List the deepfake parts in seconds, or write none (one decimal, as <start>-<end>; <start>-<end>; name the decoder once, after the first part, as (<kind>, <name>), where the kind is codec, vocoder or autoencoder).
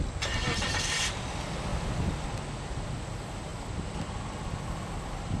none